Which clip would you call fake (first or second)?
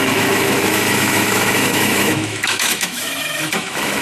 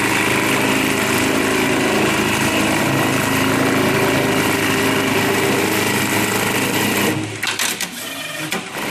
first